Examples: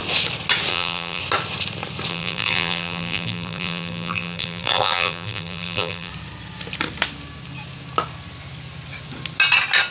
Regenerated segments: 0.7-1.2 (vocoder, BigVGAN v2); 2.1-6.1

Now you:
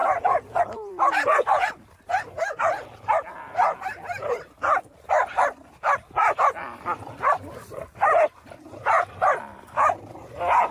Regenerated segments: 0.6-10.7 (vocoder, BigVGAN v2)

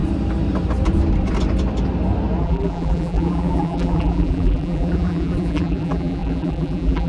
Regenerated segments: 2.4-7.1 (vocoder, BigVGAN v2)